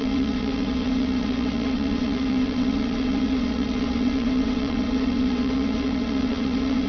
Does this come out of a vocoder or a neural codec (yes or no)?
yes